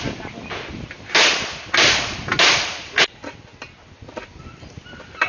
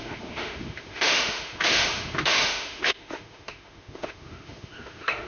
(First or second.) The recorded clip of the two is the first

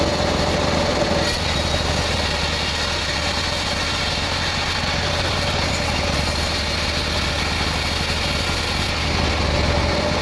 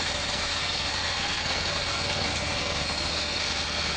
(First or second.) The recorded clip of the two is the first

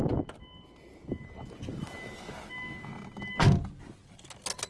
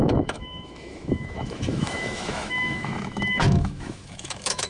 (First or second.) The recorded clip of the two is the first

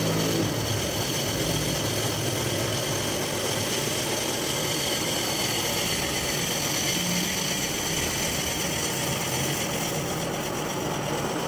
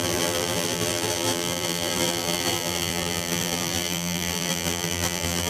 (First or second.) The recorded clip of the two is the first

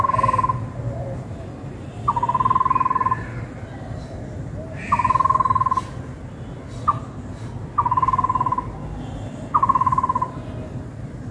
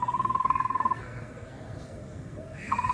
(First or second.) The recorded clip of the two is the first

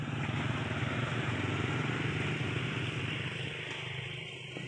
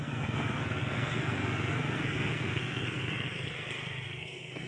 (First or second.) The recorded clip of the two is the first